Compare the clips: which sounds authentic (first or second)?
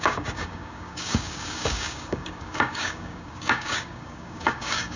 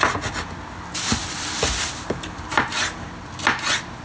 second